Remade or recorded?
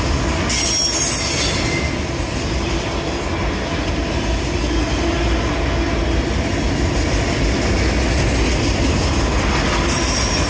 recorded